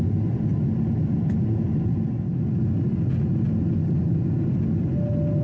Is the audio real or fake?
real